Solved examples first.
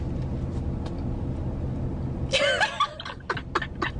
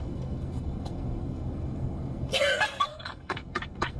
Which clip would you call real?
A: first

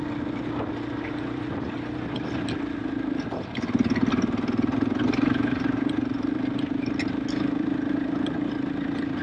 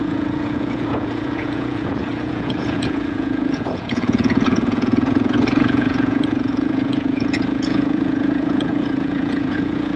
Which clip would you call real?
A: first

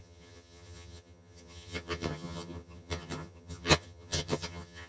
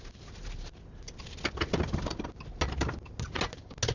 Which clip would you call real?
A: second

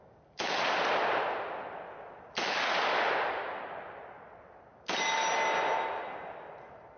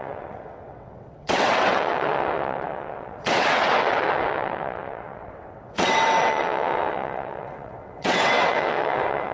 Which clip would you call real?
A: first